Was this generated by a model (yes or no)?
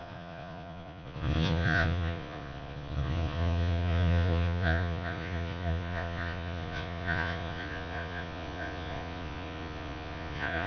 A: yes